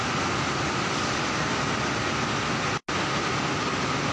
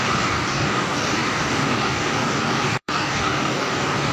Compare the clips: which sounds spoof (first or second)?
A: second